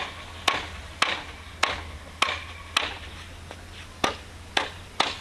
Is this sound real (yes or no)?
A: yes